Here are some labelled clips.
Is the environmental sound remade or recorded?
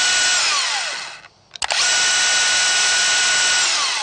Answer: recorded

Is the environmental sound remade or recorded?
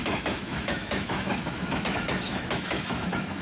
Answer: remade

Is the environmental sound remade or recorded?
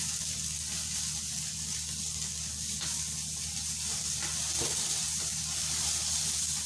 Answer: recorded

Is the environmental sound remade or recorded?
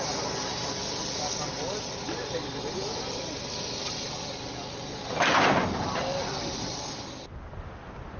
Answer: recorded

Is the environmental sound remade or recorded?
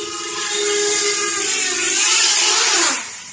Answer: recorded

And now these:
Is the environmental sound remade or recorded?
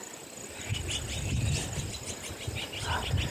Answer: recorded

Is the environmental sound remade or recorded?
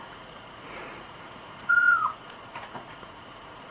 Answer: remade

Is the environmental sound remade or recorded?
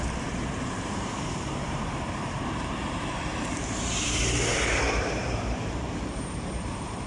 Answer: remade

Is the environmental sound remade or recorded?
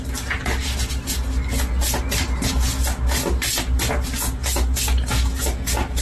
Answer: recorded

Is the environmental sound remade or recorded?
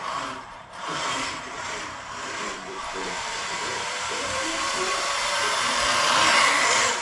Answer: remade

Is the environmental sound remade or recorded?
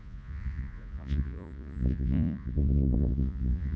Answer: remade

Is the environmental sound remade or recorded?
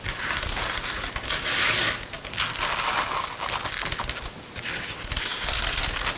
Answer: recorded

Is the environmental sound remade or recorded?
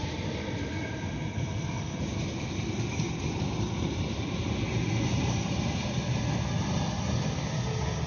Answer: recorded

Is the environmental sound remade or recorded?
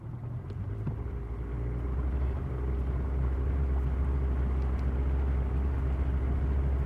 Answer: recorded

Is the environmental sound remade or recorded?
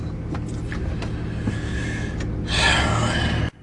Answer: recorded